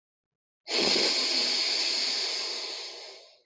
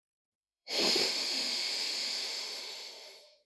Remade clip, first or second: second